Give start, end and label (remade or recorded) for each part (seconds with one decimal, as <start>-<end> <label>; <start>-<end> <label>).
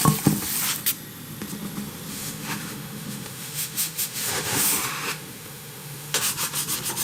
0.0-2.1 recorded; 2.1-6.3 remade; 6.3-7.0 recorded